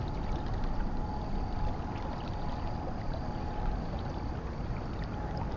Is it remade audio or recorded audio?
recorded